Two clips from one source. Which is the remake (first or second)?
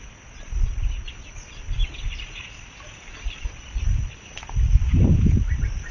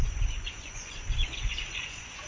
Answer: second